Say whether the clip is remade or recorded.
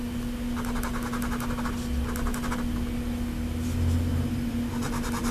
recorded